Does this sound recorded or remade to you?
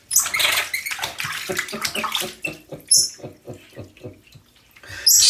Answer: recorded